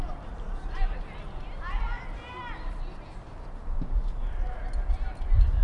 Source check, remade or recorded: recorded